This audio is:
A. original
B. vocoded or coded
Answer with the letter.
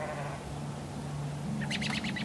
A